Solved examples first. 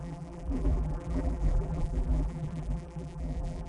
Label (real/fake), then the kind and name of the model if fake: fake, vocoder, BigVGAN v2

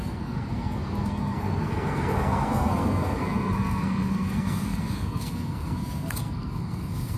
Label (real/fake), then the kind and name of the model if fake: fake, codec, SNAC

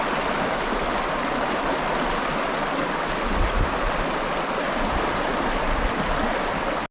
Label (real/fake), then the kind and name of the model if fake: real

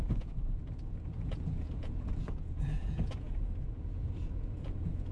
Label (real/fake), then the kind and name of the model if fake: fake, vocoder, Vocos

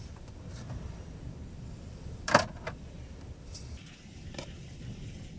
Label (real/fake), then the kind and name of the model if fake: fake, vocoder, BigVGAN v2